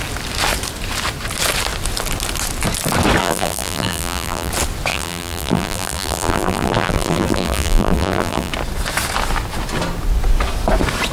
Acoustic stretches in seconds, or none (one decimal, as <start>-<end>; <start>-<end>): 0.0-3.2; 4.5-4.9; 8.5-11.1